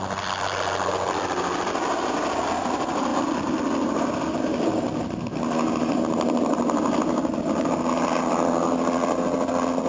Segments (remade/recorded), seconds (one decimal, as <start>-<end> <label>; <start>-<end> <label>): 0.0-9.9 recorded